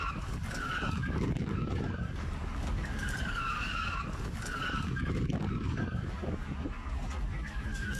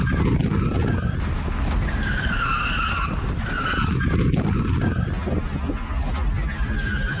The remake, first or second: first